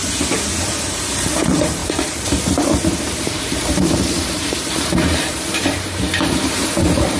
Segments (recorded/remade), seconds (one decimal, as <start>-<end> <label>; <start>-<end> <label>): 0.0-0.9 recorded; 0.9-7.2 remade